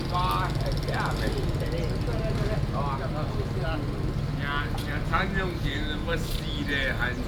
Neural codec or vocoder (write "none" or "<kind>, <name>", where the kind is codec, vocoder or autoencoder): none